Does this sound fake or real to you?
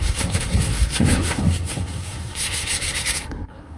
fake